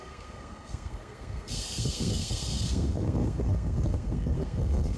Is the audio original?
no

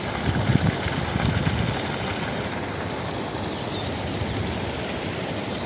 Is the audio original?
yes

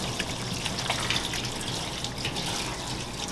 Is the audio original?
yes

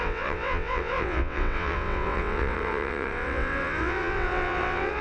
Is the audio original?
no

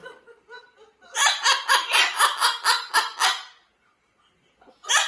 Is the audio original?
yes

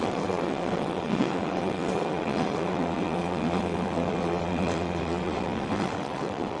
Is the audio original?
no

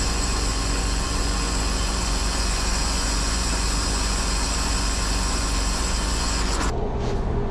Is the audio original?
no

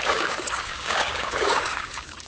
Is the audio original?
no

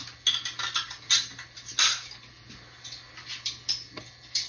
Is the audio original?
yes